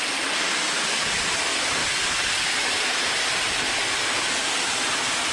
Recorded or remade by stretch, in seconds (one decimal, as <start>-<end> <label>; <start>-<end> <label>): 0.0-1.8 recorded; 1.8-4.3 remade; 4.3-5.3 recorded